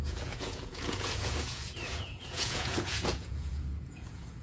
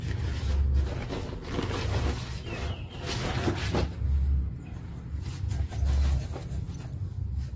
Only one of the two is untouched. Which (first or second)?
second